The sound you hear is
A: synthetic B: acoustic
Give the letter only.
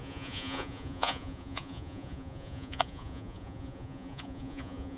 A